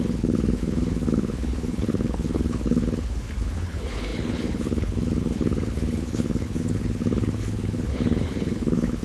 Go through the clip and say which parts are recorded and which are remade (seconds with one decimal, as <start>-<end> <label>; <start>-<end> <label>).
0.0-9.0 remade